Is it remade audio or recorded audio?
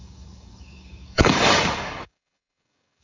remade